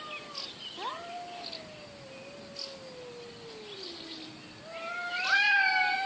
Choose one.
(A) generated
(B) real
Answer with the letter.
B